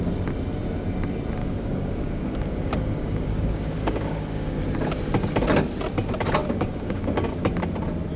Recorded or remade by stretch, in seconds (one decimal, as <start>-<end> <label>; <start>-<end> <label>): 0.0-1.4 recorded; 1.4-4.6 remade; 4.6-6.4 recorded; 6.4-7.5 remade; 7.5-8.2 recorded